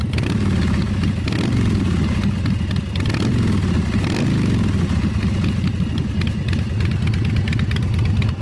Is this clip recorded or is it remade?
recorded